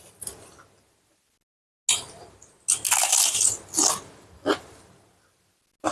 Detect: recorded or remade recorded